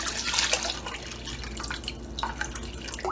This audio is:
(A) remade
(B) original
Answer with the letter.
B